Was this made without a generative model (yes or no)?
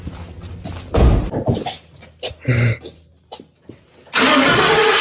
yes